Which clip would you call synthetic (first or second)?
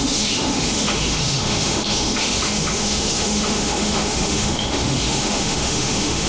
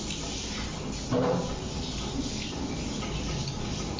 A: first